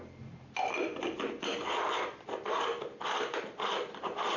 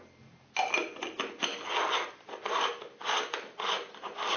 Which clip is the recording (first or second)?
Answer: second